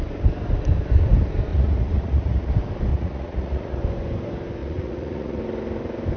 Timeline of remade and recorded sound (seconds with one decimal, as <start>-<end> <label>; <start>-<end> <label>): 0.0-1.5 recorded; 1.5-2.5 remade; 2.5-2.9 recorded; 2.9-3.8 remade; 3.8-4.6 recorded; 4.6-5.4 remade; 5.4-6.2 recorded